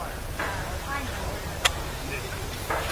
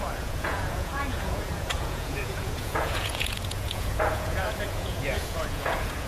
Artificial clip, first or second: second